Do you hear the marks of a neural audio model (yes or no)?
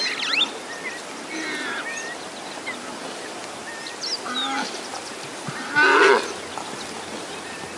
no